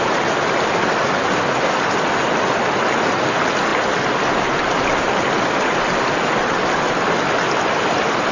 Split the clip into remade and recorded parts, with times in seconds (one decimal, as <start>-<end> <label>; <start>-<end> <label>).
0.0-8.3 recorded

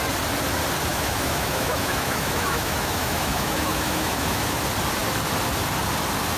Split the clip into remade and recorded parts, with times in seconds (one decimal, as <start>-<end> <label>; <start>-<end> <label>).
0.0-0.9 recorded; 0.9-4.6 remade; 4.6-6.4 recorded

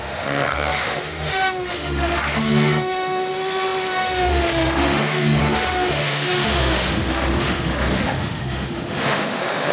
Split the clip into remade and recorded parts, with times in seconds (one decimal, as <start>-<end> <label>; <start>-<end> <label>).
0.0-9.7 remade

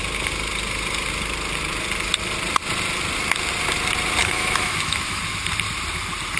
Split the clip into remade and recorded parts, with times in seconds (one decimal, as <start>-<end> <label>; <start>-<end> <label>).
0.0-4.2 recorded; 4.2-5.2 remade; 5.2-6.4 recorded

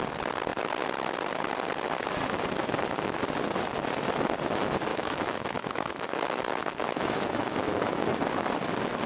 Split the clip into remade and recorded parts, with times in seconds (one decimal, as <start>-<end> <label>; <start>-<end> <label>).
0.0-4.9 recorded; 4.9-8.2 remade; 8.2-9.1 recorded